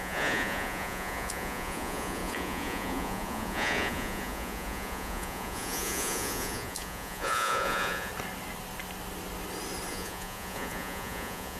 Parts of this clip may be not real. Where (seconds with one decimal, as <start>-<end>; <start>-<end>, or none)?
0.0-8.1; 9.9-11.6